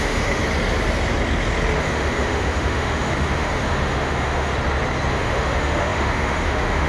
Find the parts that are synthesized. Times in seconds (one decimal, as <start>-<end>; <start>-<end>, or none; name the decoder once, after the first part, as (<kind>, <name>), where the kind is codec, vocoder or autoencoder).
0.0-0.4 (autoencoder, DAC-VAE); 1.8-4.5; 5.1-6.9